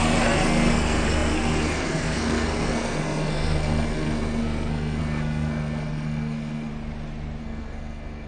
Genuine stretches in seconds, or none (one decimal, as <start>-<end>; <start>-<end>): 6.7-7.4